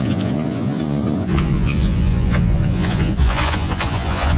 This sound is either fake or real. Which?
fake